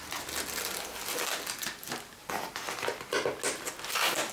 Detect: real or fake real